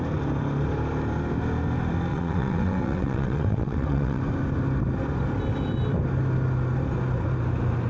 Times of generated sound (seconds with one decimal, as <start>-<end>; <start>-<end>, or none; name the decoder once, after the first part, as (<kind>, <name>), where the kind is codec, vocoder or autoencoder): 2.1-4.2 (vocoder, WaveNeXt)